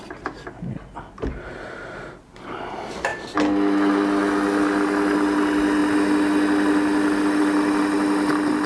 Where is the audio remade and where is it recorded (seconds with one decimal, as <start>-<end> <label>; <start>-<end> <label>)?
0.0-8.7 recorded